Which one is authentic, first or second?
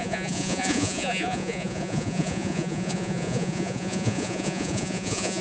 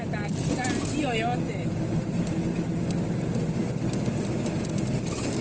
second